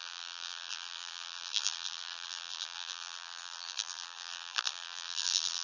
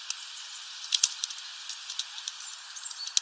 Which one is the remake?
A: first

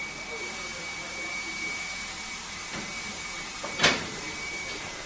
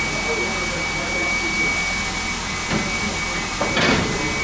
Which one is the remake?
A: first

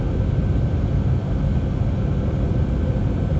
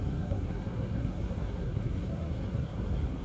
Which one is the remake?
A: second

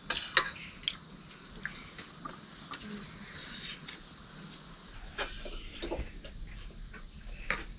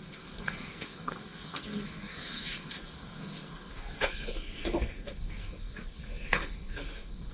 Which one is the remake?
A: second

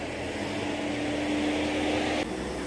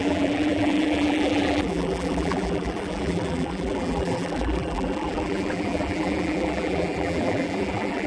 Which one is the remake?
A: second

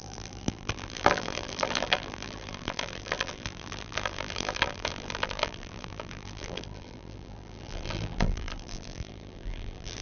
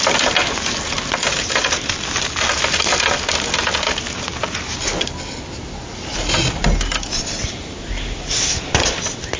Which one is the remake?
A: first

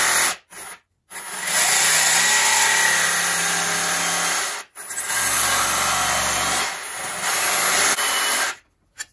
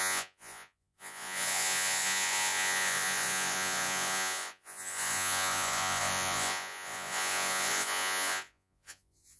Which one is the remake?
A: second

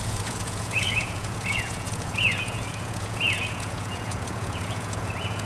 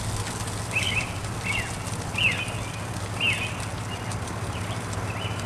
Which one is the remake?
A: first